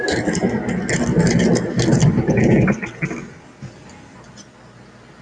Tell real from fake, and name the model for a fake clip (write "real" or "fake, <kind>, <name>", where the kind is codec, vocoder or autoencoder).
real